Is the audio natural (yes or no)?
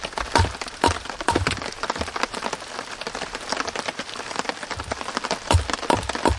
yes